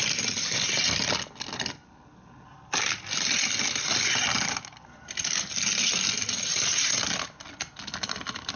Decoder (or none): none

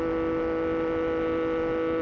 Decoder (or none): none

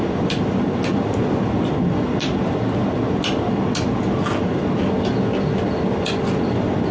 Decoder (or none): none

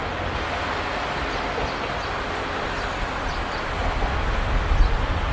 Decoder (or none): none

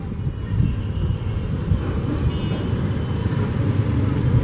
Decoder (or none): none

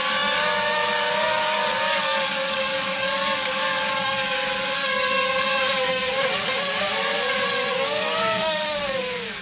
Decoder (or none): codec, DAC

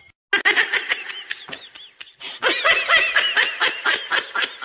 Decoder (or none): none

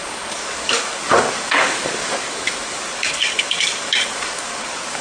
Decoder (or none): codec, DAC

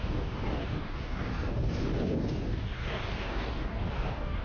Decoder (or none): codec, DAC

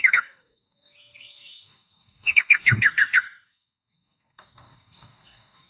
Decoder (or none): codec, DAC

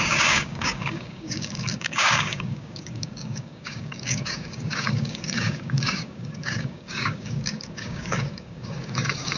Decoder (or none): codec, DAC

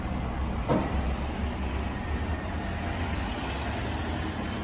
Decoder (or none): none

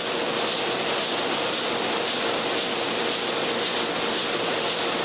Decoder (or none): none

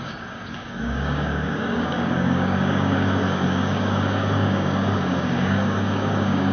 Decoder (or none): codec, DAC